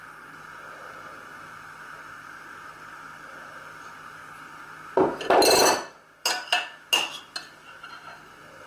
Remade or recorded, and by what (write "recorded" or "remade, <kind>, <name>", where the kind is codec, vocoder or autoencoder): recorded